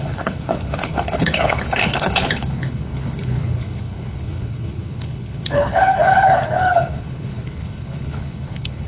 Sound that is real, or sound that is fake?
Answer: fake